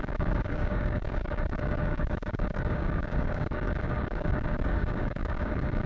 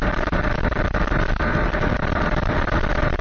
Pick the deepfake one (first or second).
first